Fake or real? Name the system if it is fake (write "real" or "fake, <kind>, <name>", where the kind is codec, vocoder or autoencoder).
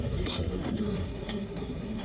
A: fake, codec, SNAC